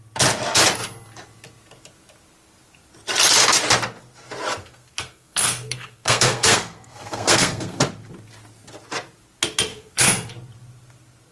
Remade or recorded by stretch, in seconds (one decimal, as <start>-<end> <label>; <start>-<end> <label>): 0.0-4.6 recorded; 4.6-7.8 remade; 7.8-9.7 recorded; 9.7-10.3 remade; 10.3-11.3 recorded